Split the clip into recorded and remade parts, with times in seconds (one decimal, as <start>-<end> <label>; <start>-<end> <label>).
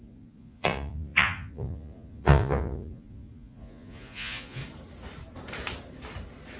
0.0-4.6 remade; 4.6-6.6 recorded